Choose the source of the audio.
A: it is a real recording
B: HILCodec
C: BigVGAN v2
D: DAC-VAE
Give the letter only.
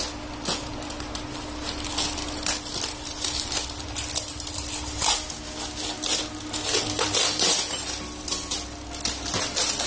A